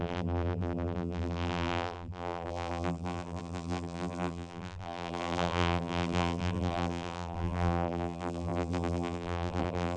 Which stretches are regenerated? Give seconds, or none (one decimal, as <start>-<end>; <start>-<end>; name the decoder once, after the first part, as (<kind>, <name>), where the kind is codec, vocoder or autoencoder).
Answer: 0.0-10.0 (vocoder, BigVGAN v2)